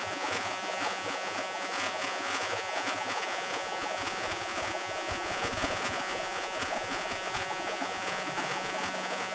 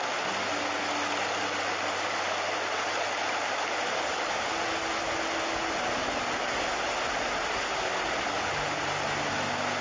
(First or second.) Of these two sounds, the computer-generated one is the first